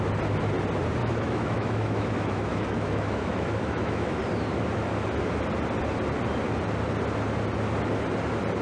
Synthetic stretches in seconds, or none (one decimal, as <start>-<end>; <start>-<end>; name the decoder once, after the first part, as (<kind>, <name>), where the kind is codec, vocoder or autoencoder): 1.0-4.2 (autoencoder, DAC-VAE)